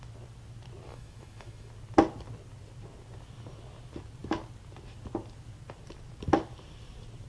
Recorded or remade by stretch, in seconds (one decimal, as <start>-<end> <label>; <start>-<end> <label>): 0.0-0.9 recorded; 0.9-1.7 remade; 1.7-7.3 recorded